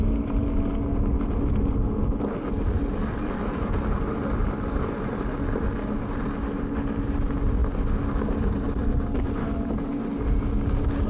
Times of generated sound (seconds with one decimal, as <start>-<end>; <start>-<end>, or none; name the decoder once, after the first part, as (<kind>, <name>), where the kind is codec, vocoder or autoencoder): none